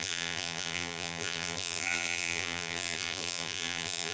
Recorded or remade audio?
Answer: remade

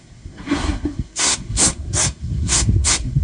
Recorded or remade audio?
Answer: remade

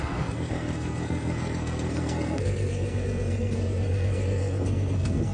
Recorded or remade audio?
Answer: remade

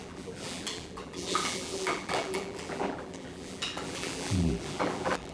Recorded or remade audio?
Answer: remade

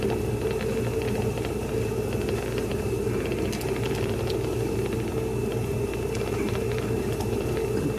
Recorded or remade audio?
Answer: recorded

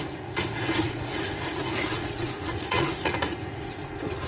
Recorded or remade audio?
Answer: remade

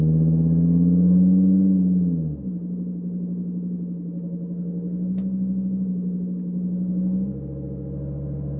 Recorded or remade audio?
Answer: recorded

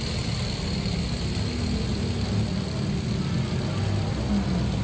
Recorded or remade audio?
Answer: recorded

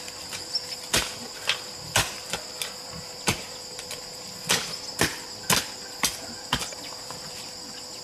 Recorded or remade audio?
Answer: recorded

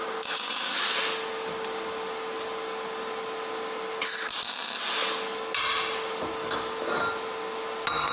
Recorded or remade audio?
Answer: recorded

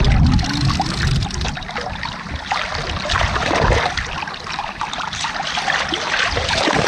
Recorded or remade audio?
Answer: recorded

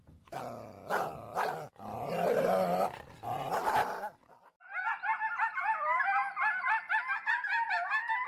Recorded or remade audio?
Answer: recorded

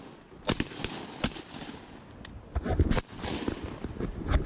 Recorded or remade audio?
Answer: recorded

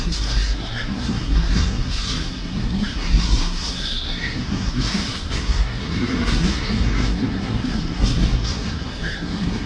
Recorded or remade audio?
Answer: remade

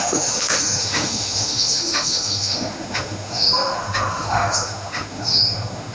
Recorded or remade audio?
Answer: remade